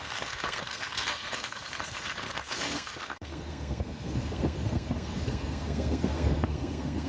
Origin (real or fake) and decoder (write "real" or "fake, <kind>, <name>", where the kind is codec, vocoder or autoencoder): fake, codec, SNAC